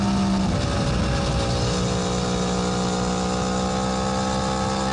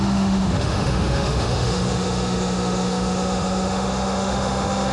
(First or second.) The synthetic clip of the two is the second